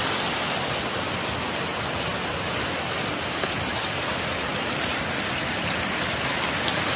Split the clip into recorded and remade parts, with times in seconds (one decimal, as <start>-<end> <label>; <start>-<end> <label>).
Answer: 0.0-3.7 recorded; 3.7-6.3 remade; 6.3-7.0 recorded